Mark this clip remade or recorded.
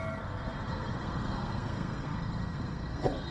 remade